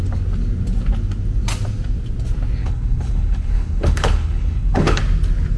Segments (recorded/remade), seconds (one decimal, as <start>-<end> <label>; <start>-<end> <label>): 0.0-2.6 recorded; 2.6-5.0 remade; 5.0-5.6 recorded